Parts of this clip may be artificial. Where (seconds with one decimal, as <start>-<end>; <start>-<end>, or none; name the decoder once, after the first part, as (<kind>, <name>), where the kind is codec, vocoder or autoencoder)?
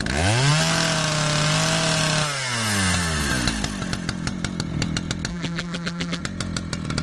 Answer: 5.3-6.2 (vocoder, BigVGAN v2)